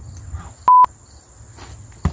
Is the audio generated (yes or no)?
no